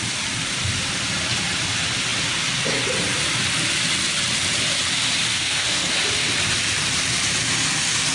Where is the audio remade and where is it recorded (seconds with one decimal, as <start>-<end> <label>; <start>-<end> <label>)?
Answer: 0.0-5.3 recorded; 5.3-5.9 remade; 5.9-8.1 recorded